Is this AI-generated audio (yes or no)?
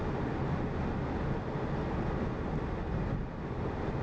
no